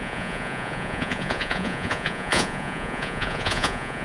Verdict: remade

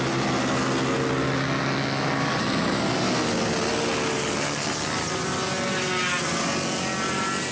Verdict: recorded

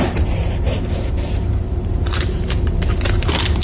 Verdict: remade